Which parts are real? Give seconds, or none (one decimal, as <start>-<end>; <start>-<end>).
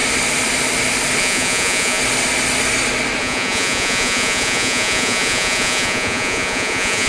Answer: 0.0-1.2; 2.0-3.2